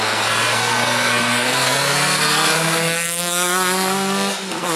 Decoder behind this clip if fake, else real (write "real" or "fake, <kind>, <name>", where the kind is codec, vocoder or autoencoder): fake, codec, SNAC